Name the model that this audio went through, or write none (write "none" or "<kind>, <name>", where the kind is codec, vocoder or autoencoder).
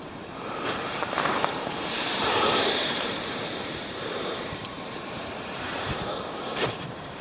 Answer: vocoder, BigVGAN v2